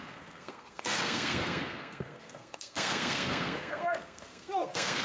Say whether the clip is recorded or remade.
remade